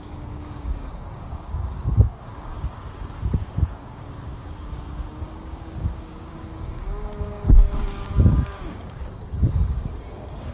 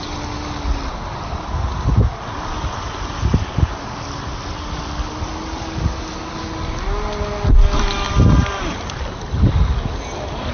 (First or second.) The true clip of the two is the second